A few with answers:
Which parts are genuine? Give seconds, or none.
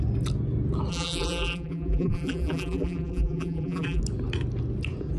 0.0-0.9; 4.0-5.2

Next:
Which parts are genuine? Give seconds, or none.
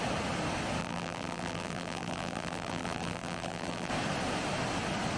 0.0-0.8; 3.9-5.2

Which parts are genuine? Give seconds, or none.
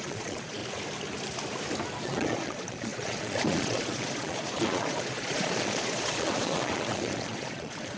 0.6-2.0